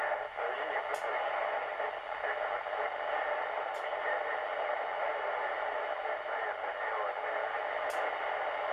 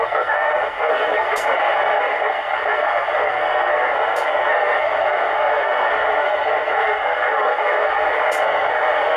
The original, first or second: first